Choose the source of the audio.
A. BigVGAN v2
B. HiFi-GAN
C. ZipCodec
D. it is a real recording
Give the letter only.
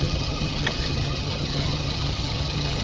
B